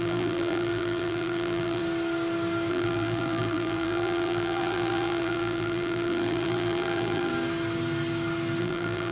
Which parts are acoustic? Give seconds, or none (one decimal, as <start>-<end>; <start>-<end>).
1.8-2.7; 7.3-8.6